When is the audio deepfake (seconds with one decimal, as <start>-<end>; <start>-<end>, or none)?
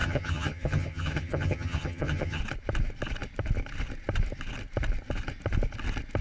0.0-2.4